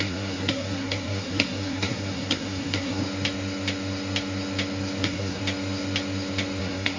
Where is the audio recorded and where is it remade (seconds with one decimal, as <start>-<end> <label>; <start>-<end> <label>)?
0.0-3.0 remade; 3.0-5.0 recorded; 5.0-5.4 remade; 5.4-6.6 recorded; 6.6-7.0 remade